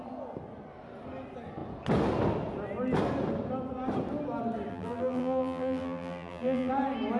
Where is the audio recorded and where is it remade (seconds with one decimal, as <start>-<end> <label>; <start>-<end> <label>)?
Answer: 0.0-4.7 recorded; 4.7-6.7 remade; 6.7-7.2 recorded